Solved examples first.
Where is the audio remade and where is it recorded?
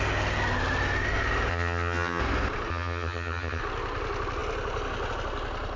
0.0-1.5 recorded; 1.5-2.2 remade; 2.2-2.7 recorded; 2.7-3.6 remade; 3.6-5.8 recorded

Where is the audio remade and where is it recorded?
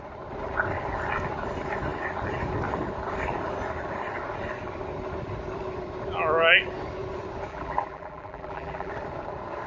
0.0-7.5 recorded; 7.5-8.9 remade; 8.9-9.7 recorded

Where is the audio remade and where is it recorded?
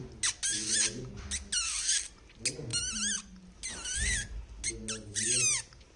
0.0-6.0 recorded